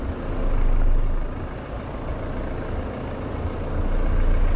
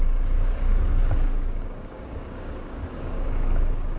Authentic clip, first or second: first